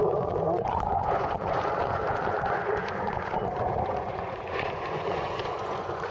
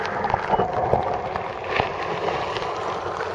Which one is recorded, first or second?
second